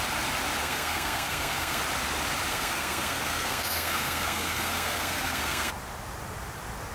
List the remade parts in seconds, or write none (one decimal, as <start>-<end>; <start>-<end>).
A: 0.6-1.8; 2.5-5.7

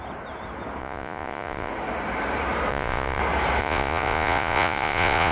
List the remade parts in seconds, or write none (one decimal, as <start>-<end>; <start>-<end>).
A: 0.8-1.7; 2.7-3.2; 3.6-5.3